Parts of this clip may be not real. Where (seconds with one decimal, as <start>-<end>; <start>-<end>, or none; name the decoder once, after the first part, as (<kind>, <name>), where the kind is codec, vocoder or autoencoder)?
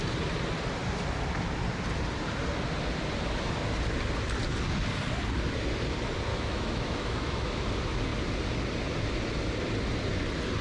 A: 6.3-7.6 (autoencoder, DAC-VAE)